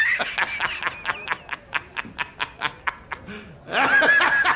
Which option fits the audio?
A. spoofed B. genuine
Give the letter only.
B